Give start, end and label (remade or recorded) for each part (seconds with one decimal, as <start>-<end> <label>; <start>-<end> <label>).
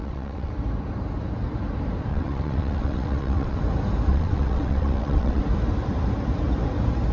0.0-0.5 remade; 0.5-2.1 recorded; 2.1-3.6 remade; 3.6-4.1 recorded; 4.1-5.4 remade; 5.4-7.1 recorded